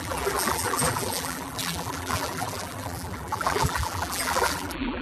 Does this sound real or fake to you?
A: fake